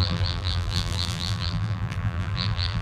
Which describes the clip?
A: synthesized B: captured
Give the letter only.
A